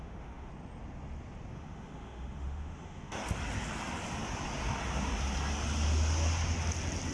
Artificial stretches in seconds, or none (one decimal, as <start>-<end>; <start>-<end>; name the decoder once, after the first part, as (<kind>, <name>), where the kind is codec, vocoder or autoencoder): 0.0-0.5 (autoencoder, DAC-VAE); 1.5-3.2